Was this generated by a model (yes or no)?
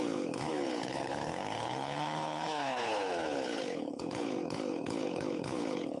yes